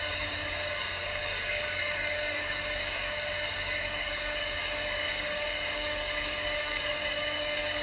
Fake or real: fake